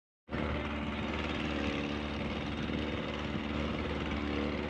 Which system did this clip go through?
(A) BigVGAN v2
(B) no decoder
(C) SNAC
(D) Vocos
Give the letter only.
B